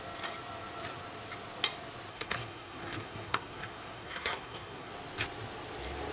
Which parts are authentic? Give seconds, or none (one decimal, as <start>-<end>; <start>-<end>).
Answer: 0.0-2.1; 4.9-6.1